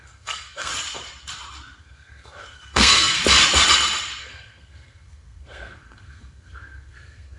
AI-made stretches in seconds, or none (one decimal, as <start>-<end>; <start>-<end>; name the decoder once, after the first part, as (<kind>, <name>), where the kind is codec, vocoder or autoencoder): 0.0-0.7 (codec, SNAC); 1.8-3.2; 4.2-7.4